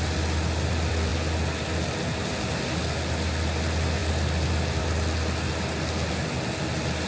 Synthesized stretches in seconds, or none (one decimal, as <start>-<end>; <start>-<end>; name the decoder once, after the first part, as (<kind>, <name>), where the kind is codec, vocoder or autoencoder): none

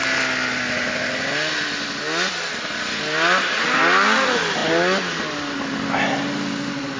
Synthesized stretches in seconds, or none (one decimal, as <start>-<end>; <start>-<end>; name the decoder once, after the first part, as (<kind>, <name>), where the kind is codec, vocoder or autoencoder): none

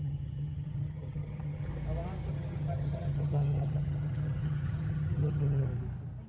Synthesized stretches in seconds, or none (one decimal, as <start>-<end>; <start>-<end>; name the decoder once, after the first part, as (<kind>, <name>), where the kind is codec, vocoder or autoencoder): 0.0-1.7 (vocoder, HiFi-GAN); 2.3-5.7

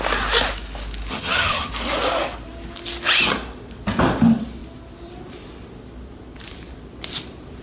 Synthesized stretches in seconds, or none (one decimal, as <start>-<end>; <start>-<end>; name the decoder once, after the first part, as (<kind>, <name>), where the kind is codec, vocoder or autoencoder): 1.1-1.7 (vocoder, HiFi-GAN)

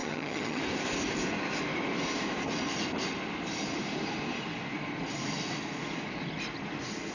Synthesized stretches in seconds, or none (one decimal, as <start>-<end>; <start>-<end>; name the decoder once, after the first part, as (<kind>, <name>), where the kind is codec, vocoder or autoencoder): 0.0-0.6 (vocoder, HiFi-GAN)

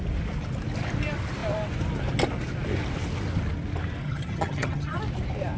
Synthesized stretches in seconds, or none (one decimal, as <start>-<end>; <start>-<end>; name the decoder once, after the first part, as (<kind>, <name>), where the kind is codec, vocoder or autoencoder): 4.0-5.0 (vocoder, HiFi-GAN)